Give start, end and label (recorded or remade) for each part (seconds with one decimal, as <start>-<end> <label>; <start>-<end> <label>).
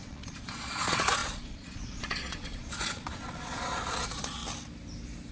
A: 0.0-4.4 remade; 4.4-5.3 recorded